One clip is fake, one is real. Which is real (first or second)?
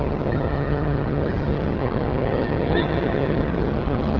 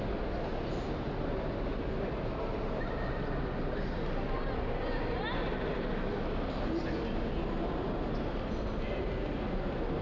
second